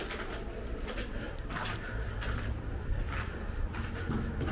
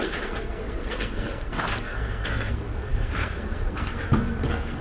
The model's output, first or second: second